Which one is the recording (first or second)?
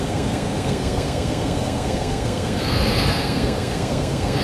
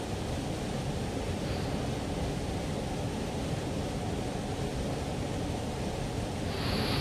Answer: second